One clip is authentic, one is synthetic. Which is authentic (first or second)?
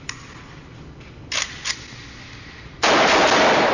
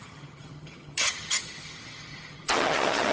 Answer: first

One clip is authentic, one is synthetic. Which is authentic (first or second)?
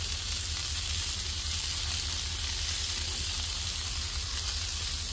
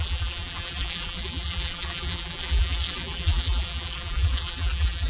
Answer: first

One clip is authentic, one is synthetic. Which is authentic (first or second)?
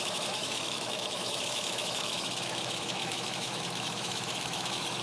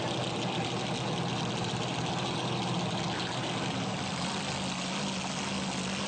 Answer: second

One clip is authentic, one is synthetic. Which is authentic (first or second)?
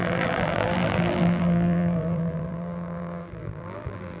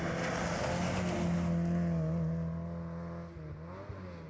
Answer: second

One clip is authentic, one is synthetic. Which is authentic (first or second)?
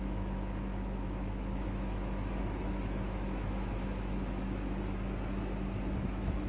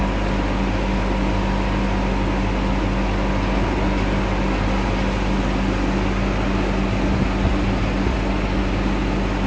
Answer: second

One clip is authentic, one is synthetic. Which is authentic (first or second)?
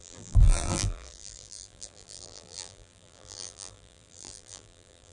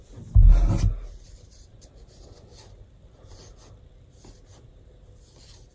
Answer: second